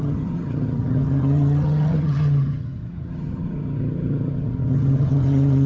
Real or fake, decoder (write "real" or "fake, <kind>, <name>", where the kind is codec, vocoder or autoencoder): fake, vocoder, HiFi-GAN